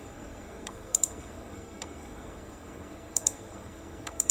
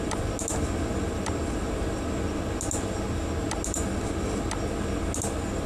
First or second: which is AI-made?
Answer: first